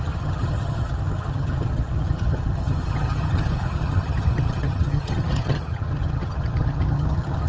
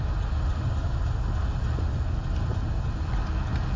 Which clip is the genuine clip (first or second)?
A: second